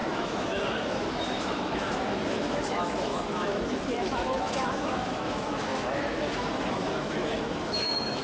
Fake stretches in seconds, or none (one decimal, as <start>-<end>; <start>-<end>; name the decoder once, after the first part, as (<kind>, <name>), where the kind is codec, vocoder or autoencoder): 0.0-8.2 (autoencoder, DAC-VAE)